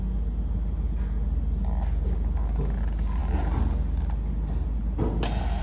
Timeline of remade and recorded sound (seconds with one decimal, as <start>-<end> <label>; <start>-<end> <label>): 0.0-5.6 recorded